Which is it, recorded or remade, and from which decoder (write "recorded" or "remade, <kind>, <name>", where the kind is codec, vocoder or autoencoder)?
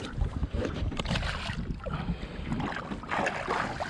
recorded